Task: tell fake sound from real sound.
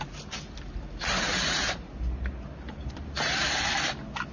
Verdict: real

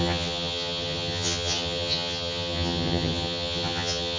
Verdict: fake